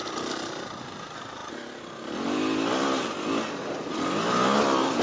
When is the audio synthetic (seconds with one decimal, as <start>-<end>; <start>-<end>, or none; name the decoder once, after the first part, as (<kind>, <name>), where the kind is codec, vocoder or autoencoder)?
0.0-0.8 (vocoder, BigVGAN v2)